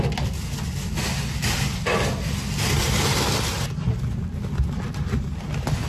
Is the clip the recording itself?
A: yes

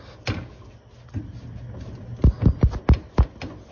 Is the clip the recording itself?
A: yes